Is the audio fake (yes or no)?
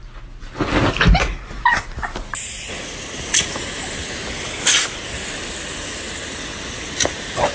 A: no